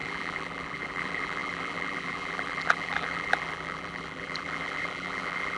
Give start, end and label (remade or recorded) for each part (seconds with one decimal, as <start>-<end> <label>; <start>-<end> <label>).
0.0-5.6 remade